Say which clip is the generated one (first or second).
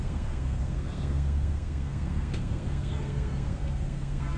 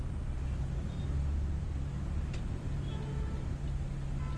first